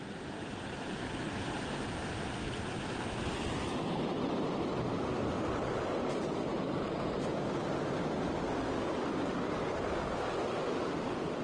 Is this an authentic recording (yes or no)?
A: yes